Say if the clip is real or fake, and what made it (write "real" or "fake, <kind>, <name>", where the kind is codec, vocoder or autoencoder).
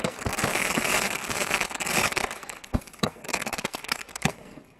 fake, codec, SNAC